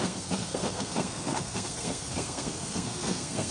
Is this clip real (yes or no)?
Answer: no